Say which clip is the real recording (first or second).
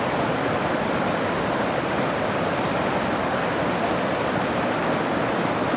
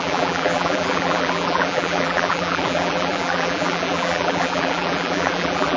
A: first